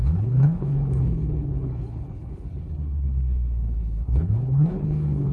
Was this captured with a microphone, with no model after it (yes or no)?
no